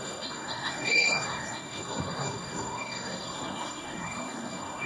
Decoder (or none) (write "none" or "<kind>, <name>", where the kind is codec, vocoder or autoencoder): codec, SNAC